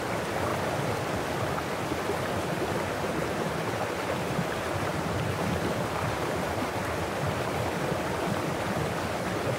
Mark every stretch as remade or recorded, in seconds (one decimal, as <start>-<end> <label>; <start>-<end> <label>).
0.0-9.6 recorded